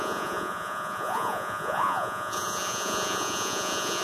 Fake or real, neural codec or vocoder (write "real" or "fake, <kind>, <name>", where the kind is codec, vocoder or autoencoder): fake, vocoder, Vocos